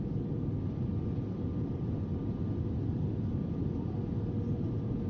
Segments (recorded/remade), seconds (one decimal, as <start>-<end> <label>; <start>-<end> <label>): 0.0-5.1 recorded